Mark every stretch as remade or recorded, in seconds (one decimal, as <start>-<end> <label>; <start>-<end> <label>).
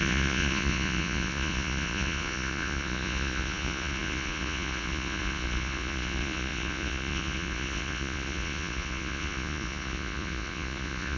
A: 0.0-11.2 remade